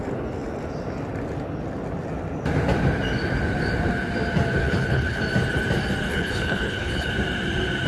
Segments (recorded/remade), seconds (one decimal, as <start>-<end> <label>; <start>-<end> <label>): 0.0-4.6 recorded; 4.6-5.2 remade; 5.2-6.1 recorded; 6.1-7.1 remade; 7.1-7.9 recorded